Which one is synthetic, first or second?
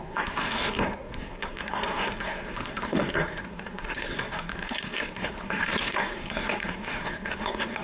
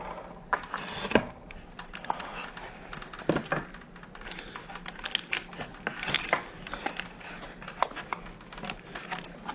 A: first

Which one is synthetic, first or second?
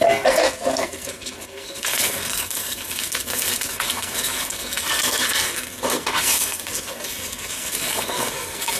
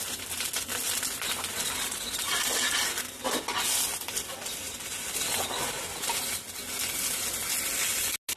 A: first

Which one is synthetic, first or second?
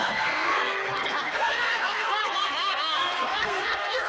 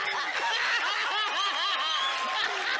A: first